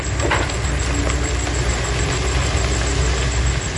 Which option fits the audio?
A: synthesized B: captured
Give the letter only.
B